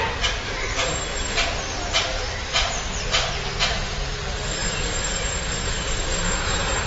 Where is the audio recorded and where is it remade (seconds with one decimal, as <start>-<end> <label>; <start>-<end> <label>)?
0.0-1.1 recorded; 1.1-3.3 remade; 3.3-4.6 recorded; 4.6-6.2 remade; 6.2-6.9 recorded